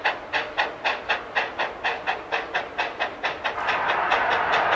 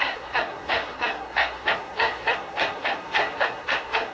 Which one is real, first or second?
first